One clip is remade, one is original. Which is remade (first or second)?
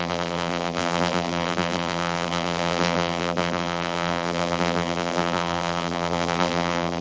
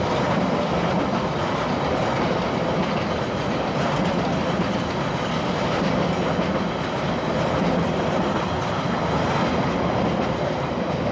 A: first